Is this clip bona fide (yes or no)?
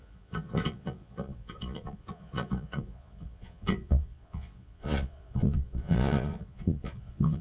no